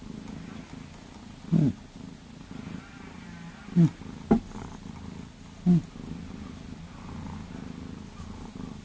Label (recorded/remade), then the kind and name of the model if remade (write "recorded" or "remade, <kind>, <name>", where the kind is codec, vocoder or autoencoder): recorded